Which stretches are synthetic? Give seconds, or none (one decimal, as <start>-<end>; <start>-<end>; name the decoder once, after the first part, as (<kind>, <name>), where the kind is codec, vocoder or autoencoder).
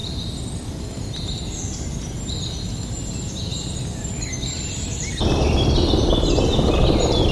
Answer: 0.0-3.1 (vocoder, BigVGAN v2); 3.5-6.1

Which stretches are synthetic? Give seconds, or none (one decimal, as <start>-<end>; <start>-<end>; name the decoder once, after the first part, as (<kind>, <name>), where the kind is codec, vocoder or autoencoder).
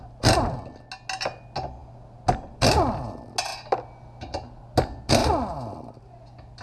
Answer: none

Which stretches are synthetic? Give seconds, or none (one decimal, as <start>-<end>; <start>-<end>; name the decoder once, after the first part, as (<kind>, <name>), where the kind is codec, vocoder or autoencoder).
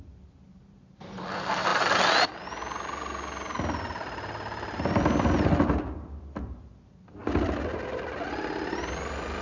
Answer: none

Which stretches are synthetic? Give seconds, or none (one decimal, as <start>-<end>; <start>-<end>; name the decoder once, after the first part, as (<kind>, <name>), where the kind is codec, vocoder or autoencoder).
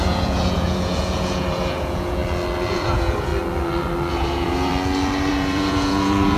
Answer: 0.0-2.2 (vocoder, Vocos); 2.7-3.3; 4.1-4.7; 5.3-6.4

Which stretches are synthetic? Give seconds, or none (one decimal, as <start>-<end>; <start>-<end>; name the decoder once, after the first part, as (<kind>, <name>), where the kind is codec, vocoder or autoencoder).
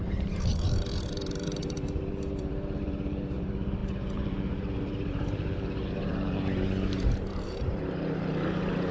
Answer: 0.0-8.9 (vocoder, BigVGAN v2)